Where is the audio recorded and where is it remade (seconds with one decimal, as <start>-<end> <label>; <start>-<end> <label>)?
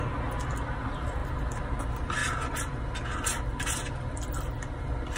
0.0-5.2 recorded